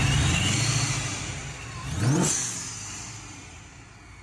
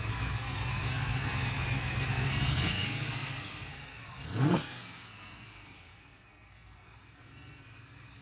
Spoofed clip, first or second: second